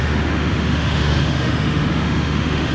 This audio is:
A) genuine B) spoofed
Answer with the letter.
B